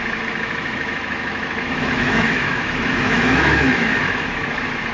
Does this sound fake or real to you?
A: fake